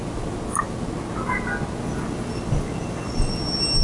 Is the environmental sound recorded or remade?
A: recorded